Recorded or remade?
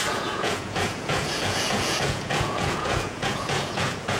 remade